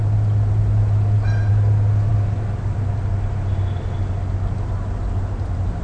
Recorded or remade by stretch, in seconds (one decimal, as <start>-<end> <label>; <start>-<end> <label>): 0.0-5.8 recorded